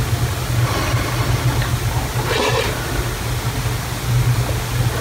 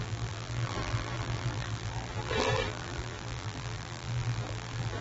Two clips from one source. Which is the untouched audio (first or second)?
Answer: first